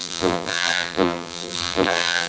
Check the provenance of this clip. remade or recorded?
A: remade